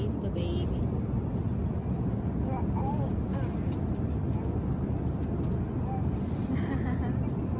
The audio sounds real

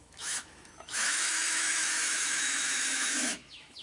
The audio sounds fake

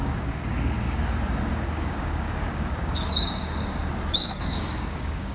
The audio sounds fake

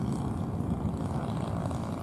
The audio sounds real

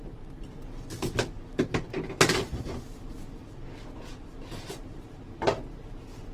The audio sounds fake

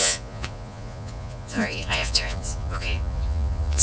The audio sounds fake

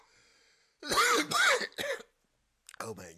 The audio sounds real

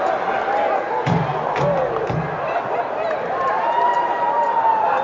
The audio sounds real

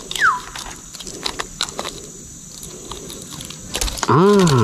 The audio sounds real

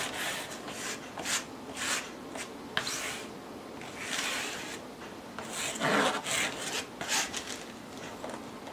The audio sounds real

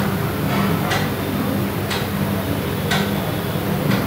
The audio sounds real